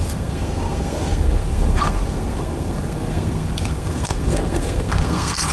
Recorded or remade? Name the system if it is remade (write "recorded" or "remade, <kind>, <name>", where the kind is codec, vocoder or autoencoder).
remade, codec, SNAC